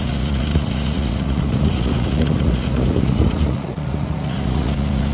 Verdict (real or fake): fake